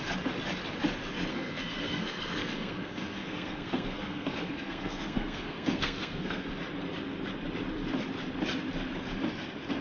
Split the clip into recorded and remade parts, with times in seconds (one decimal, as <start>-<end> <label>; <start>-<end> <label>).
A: 0.0-1.3 recorded; 1.3-6.5 remade; 6.5-9.8 recorded